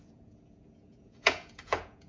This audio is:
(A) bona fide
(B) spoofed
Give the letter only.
B